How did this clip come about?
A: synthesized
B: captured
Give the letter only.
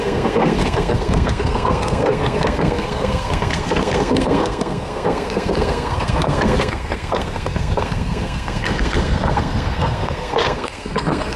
A